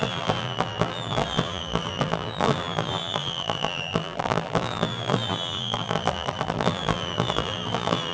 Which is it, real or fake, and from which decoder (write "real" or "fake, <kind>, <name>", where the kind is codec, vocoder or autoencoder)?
fake, vocoder, BigVGAN v2